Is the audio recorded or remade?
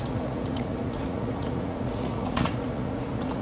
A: remade